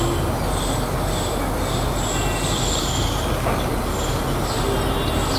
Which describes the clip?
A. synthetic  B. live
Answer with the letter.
B